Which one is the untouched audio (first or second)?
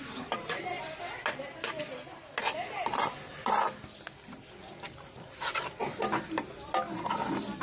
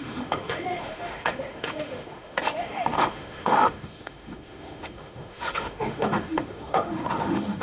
first